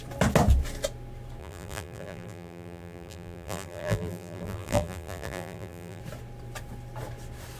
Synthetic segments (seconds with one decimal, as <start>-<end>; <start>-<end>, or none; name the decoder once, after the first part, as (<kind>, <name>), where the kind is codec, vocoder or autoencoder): 1.4-6.0 (vocoder, BigVGAN v2)